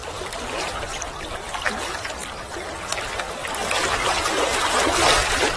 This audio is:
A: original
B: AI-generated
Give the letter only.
B